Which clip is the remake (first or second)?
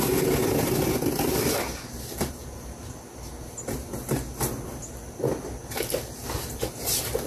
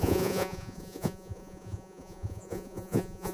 second